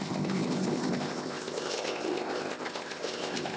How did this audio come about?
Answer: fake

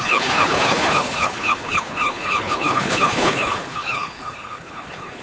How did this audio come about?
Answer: fake